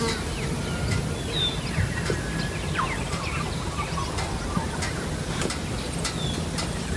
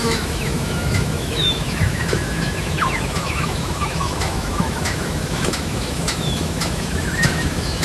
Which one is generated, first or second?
second